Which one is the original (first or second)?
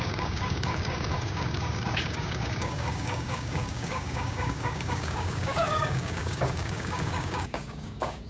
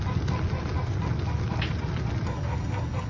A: second